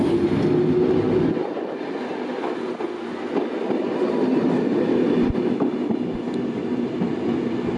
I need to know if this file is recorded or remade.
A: recorded